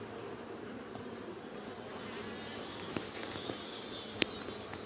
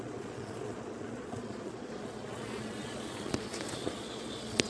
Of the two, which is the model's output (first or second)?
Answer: second